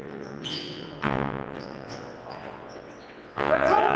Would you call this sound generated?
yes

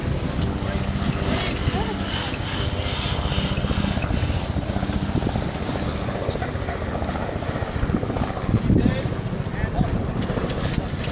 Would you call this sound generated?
no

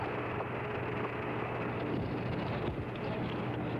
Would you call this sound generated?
no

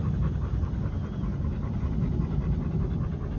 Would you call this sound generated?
no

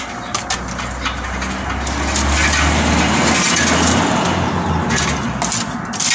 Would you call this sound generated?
no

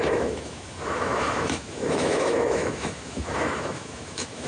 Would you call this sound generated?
yes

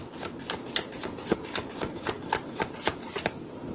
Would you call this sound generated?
no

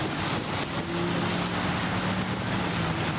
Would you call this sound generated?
no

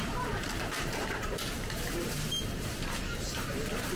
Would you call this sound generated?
yes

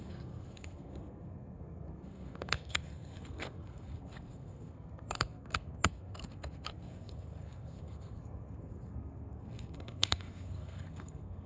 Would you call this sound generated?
yes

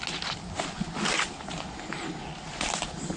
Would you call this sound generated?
no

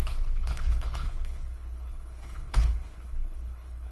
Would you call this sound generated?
yes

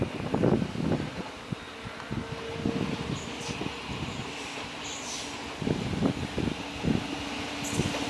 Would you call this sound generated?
no